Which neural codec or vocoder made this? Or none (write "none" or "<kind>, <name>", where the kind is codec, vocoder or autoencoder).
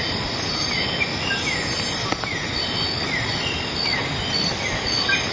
none